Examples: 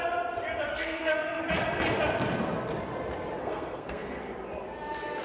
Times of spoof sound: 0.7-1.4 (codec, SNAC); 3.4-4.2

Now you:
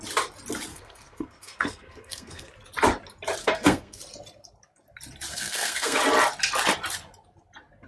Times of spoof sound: 0.7-2.5 (codec, SNAC); 3.4-4.0; 5.3-6.0

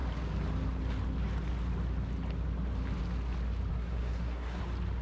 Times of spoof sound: 3.7-4.6 (codec, SNAC)